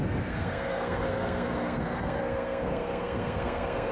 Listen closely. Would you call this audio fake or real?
fake